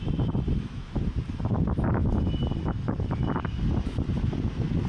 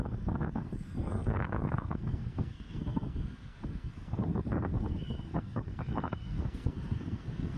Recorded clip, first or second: first